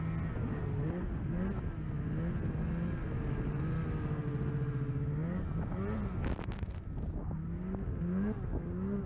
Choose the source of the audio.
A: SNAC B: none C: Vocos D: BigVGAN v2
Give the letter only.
B